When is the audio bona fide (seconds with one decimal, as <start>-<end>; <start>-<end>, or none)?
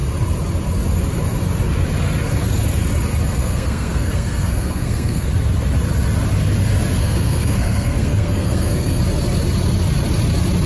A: 0.0-3.4; 5.3-7.0; 9.0-10.7